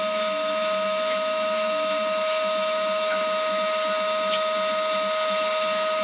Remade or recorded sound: remade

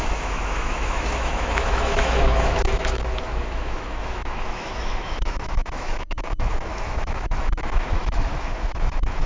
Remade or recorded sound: remade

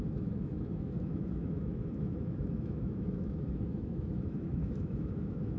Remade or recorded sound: remade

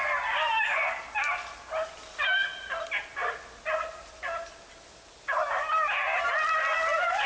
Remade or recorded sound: recorded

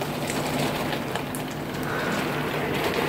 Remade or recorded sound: recorded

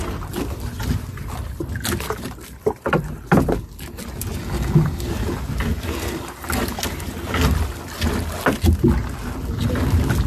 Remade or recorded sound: recorded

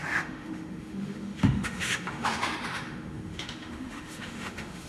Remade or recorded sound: remade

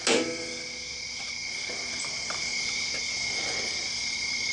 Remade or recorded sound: recorded